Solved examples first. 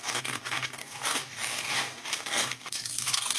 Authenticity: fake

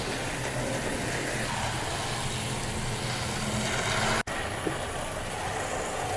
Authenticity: real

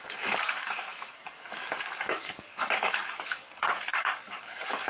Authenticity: fake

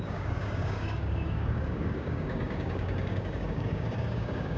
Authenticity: fake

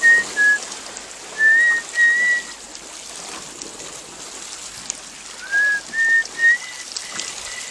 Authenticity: real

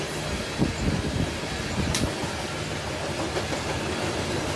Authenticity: real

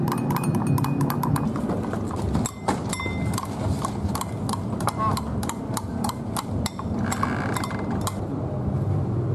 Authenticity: real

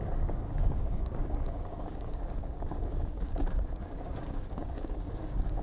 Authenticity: fake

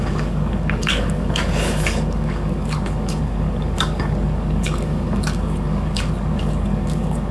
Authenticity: fake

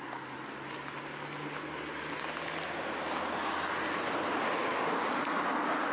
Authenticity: real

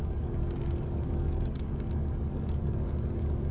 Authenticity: fake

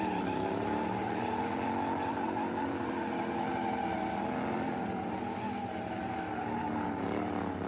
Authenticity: real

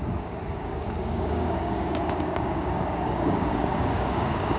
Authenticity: fake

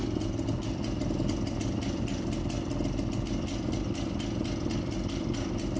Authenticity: real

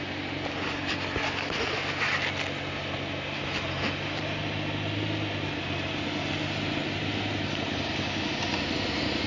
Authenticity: real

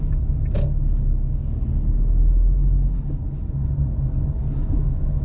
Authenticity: real